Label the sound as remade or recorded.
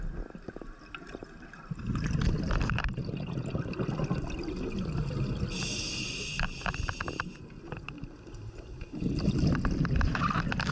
recorded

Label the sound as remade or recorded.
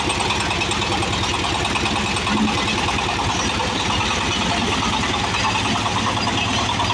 recorded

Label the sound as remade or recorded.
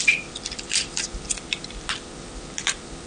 remade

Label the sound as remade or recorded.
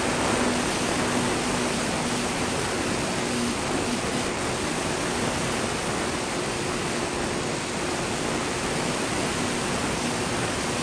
recorded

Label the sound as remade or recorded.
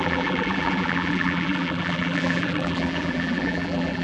remade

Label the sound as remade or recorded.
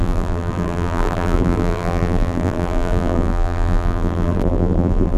remade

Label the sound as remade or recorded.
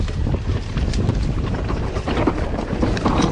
remade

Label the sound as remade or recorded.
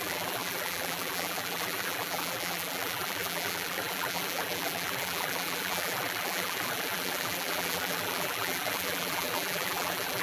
remade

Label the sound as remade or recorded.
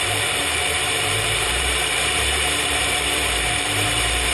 remade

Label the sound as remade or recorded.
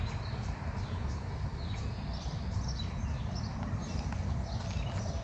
recorded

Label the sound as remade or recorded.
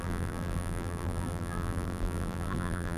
remade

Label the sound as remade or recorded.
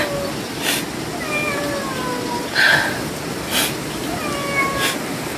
recorded